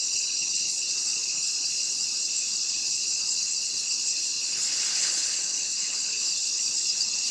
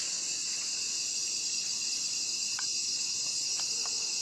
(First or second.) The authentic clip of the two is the second